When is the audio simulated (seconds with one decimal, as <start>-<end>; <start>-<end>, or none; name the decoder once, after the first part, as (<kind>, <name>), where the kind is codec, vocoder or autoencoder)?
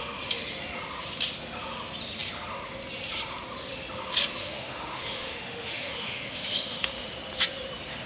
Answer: 4.4-7.1 (autoencoder, DAC-VAE)